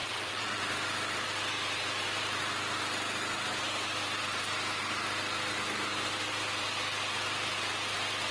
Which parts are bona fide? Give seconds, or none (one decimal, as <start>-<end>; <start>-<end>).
0.6-8.3